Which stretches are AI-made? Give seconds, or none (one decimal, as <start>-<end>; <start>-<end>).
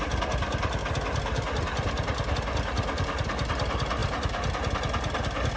none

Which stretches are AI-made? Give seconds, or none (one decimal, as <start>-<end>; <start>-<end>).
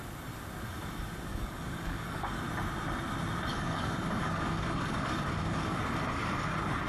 1.3-2.4; 3.5-5.8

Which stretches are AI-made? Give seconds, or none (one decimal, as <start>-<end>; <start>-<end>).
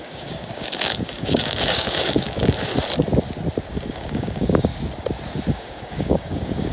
0.0-2.7; 3.7-4.7; 5.5-6.7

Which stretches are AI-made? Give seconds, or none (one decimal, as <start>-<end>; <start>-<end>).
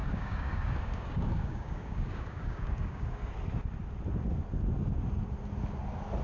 0.0-3.3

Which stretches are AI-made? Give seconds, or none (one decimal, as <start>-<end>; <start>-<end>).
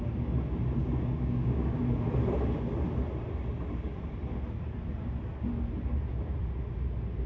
0.8-1.8